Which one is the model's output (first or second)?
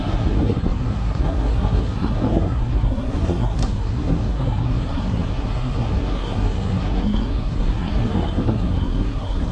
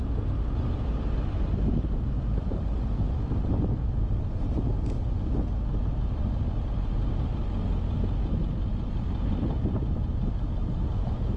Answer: first